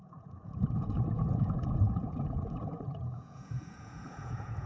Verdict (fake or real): fake